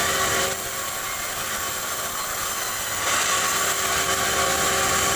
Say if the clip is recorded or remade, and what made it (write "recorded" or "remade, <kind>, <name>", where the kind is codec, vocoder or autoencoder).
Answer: recorded